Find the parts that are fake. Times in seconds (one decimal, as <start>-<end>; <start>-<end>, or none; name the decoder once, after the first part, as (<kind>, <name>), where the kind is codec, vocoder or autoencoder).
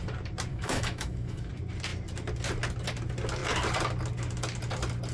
0.5-1.5 (autoencoder, DAC-VAE)